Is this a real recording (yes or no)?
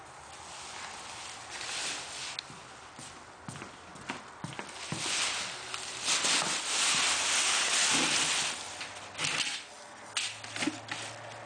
yes